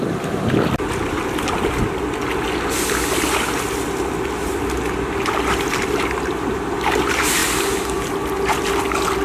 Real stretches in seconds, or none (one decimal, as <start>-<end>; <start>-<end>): 0.0-9.2